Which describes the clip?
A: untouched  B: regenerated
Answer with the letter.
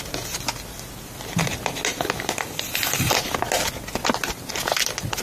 A